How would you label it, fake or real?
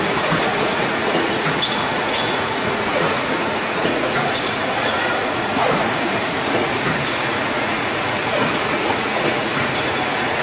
fake